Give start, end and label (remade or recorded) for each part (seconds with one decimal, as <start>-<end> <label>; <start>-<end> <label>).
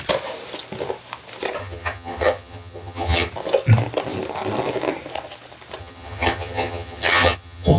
0.0-1.6 recorded; 1.6-3.3 remade; 3.3-5.8 recorded; 5.8-7.8 remade